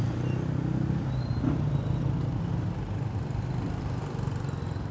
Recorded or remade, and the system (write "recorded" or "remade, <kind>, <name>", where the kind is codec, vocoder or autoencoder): recorded